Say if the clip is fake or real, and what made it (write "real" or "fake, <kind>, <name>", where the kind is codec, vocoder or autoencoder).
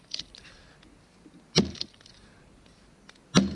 real